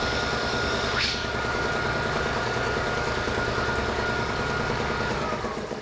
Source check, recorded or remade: remade